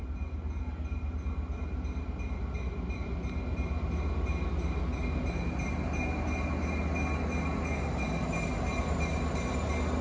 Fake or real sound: real